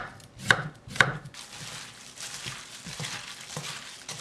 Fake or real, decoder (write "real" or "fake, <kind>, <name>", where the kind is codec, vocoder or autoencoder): real